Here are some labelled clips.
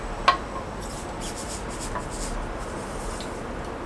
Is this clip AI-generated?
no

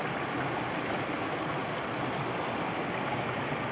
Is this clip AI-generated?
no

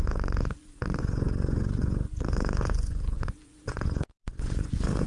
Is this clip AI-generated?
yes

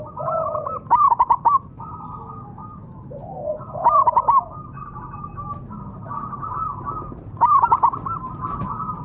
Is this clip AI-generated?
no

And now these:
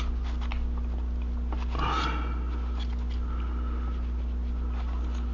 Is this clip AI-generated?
no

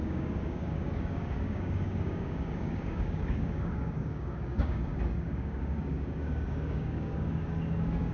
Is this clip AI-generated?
yes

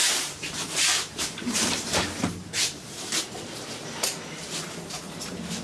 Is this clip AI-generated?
yes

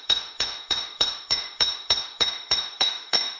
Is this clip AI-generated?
yes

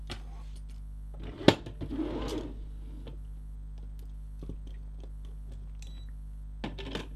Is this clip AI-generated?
no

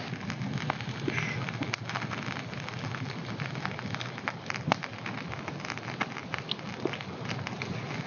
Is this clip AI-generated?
no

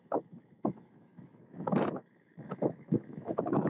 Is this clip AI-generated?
yes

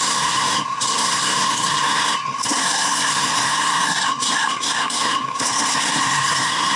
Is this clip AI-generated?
yes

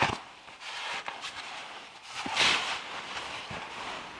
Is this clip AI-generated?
no